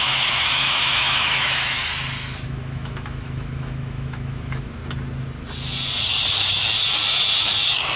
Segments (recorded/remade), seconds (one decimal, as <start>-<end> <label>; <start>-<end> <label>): 0.0-1.8 remade; 1.8-2.5 recorded; 2.5-4.8 remade; 4.8-8.0 recorded

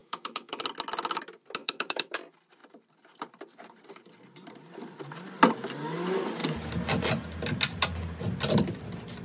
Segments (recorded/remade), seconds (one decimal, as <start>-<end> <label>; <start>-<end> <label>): 0.0-0.6 remade; 0.6-1.6 recorded; 1.6-2.2 remade; 2.2-9.2 recorded

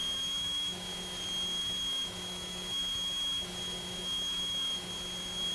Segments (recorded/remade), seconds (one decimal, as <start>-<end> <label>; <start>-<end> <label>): 0.0-1.2 remade; 1.2-1.6 recorded; 1.6-4.9 remade; 4.9-5.5 recorded

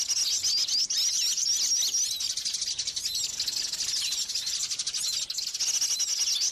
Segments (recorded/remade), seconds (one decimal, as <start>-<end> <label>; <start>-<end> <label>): 0.0-6.5 recorded

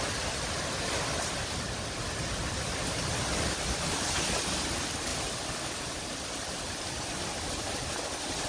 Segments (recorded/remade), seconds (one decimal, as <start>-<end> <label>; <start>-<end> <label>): 0.0-8.5 recorded

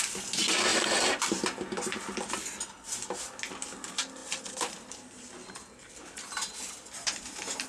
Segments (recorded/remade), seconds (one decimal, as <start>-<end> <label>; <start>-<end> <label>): 0.0-7.7 recorded

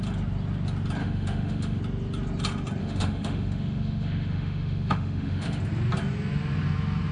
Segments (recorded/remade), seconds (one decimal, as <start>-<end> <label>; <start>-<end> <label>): 0.0-1.0 recorded; 1.0-1.8 remade; 1.8-2.8 recorded; 2.8-5.6 remade; 5.6-7.1 recorded

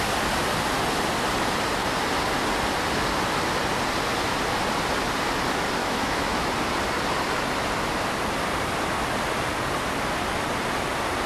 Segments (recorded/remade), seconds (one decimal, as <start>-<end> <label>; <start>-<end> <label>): 0.0-5.8 recorded; 5.8-6.5 remade; 6.5-11.3 recorded